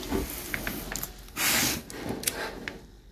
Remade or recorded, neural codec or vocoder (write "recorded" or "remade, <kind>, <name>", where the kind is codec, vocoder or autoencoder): recorded